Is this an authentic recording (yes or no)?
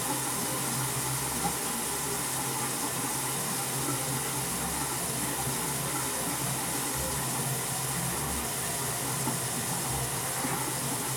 yes